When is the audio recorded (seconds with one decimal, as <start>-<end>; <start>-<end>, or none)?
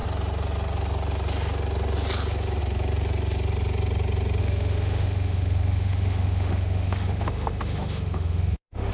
0.0-4.4